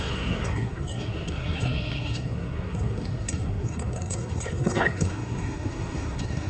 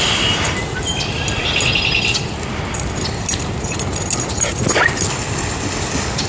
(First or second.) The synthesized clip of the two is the first